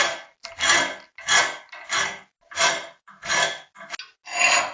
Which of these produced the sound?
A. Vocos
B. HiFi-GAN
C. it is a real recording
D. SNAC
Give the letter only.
C